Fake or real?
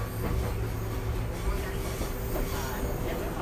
real